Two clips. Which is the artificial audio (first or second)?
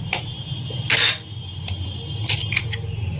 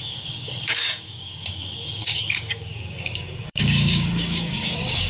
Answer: second